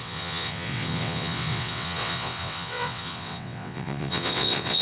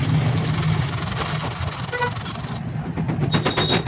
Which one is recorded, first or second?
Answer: second